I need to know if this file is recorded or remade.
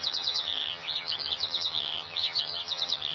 remade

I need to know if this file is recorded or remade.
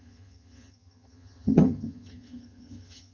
remade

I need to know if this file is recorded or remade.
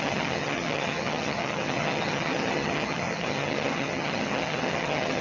remade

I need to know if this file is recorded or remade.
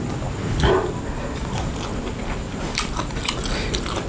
recorded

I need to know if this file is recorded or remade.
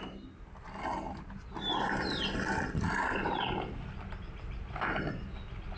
recorded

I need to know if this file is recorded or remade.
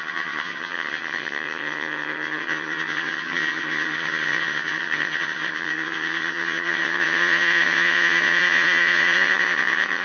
remade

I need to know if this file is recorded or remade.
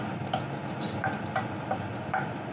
recorded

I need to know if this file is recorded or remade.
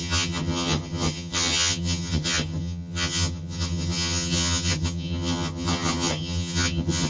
remade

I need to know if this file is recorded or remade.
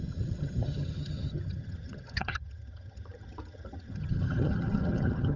remade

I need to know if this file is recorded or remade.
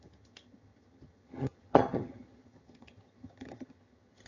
remade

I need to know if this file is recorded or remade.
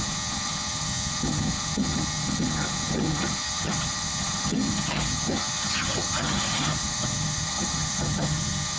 remade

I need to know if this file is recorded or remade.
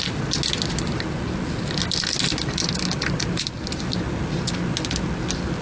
recorded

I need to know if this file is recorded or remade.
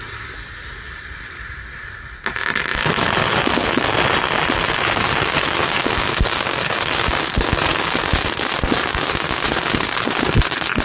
recorded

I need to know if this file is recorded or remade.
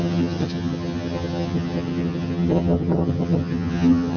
remade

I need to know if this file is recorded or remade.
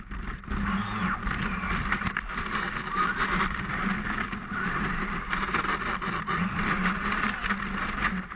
recorded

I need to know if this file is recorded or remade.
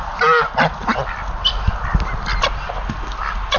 recorded